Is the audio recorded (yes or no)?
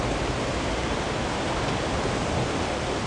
no